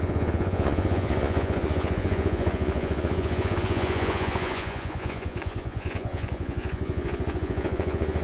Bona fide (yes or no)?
no